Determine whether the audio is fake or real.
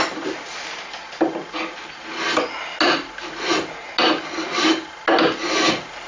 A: real